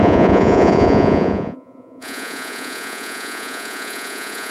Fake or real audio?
fake